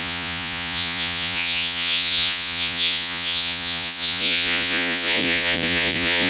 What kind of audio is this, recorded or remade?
remade